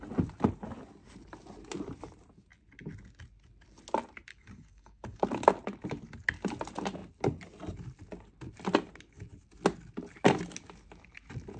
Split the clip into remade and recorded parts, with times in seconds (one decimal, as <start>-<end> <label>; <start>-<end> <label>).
0.0-4.3 recorded; 4.3-5.2 remade; 5.2-11.6 recorded

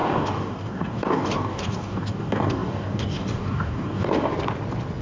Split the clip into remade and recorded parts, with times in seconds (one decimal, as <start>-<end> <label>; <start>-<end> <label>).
0.0-4.3 remade; 4.3-5.0 recorded

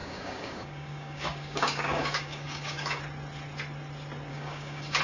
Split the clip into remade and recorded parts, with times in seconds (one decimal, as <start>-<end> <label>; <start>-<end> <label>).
0.0-3.0 remade; 3.0-4.3 recorded; 4.3-5.0 remade

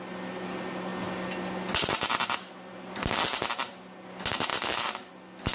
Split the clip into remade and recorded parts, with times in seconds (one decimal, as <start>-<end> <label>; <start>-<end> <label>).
0.0-5.5 recorded

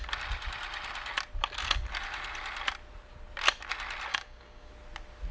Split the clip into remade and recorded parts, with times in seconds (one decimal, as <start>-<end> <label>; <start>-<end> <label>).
0.0-4.1 recorded; 4.1-4.7 remade; 4.7-5.3 recorded

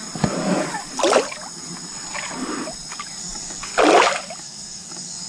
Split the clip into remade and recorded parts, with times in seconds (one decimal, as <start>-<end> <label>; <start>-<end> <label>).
0.0-3.2 recorded; 3.2-3.7 remade; 3.7-4.4 recorded; 4.4-5.3 remade

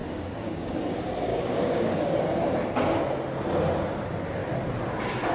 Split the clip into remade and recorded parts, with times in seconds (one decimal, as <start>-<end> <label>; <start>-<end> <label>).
0.0-0.7 remade; 0.7-1.3 recorded; 1.3-2.2 remade; 2.2-5.3 recorded

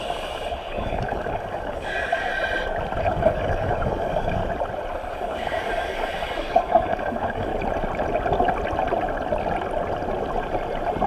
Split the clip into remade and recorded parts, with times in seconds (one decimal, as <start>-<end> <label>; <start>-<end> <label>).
0.0-2.3 remade; 2.3-3.0 recorded; 3.0-4.4 remade; 4.4-5.1 recorded; 5.1-7.5 remade; 7.5-11.1 recorded